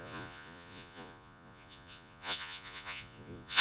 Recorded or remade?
remade